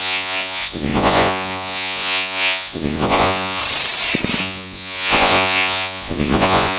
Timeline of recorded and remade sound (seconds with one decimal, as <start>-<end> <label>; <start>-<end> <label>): 0.0-3.6 remade; 3.6-4.4 recorded; 4.4-6.8 remade